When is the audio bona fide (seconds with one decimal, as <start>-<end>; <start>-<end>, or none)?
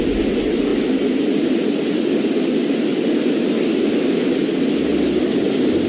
0.0-5.9